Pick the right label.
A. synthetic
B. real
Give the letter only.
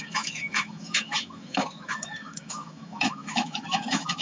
A